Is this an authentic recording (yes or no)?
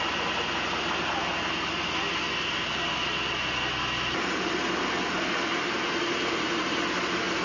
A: yes